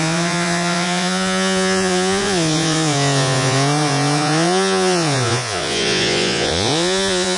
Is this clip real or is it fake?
fake